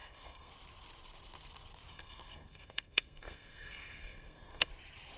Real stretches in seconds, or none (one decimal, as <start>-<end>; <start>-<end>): 0.5-1.9; 4.7-5.2